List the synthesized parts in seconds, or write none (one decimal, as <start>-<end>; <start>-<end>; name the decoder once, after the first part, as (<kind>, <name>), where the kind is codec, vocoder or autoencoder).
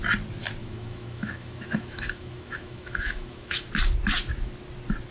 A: 0.6-3.7 (autoencoder, DAC-VAE)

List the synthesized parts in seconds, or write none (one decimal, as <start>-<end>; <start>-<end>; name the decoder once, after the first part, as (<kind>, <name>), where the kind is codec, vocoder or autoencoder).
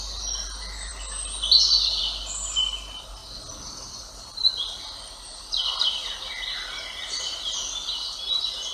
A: none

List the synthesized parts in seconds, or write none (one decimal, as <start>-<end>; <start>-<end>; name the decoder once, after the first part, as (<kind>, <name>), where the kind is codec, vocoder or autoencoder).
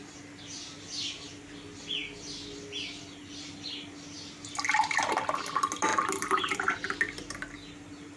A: none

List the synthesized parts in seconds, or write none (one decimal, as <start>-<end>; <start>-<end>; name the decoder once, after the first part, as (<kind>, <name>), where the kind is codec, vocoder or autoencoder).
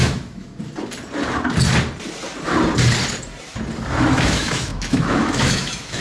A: 0.0-0.5 (autoencoder, DAC-VAE); 4.1-6.0